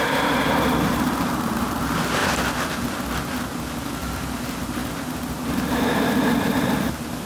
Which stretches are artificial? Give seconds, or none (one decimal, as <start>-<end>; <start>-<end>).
0.0-2.2; 3.9-7.3